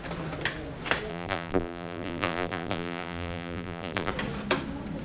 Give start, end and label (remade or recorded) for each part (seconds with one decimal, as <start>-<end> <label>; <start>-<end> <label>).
0.0-1.1 recorded; 1.1-4.1 remade; 4.1-5.0 recorded